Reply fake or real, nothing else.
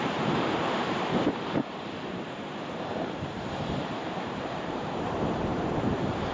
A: fake